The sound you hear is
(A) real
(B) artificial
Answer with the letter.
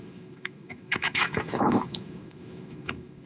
B